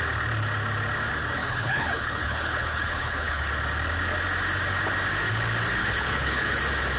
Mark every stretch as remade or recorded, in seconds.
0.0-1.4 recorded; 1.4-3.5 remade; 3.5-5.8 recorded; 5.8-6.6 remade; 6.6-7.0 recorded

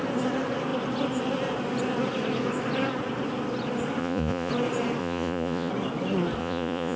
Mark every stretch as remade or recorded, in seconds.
0.0-4.0 recorded; 4.0-4.5 remade; 4.5-5.0 recorded; 5.0-5.7 remade; 5.7-6.4 recorded; 6.4-7.0 remade